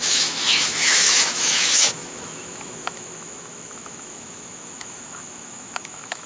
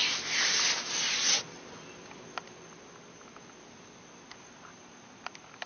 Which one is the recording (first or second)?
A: second